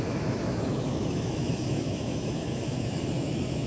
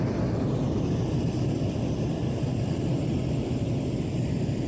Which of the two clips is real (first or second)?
second